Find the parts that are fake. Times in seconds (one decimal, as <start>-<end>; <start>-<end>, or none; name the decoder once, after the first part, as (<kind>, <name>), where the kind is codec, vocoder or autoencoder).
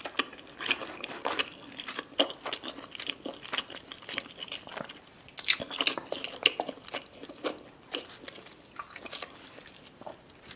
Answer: none